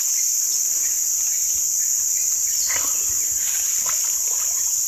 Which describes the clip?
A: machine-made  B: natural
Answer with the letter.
B